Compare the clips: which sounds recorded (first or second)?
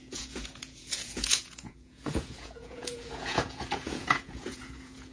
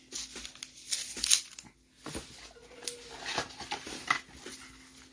second